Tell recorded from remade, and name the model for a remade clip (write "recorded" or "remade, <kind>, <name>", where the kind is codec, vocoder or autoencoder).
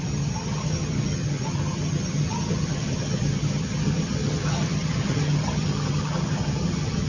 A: remade, vocoder, HiFi-GAN